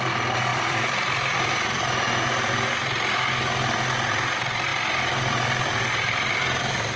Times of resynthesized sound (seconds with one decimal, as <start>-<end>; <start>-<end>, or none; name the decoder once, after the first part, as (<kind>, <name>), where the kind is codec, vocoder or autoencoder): 0.5-1.5 (vocoder, BigVGAN v2); 4.7-6.3